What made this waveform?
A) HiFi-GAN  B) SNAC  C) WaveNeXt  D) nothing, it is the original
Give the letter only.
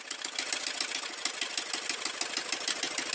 D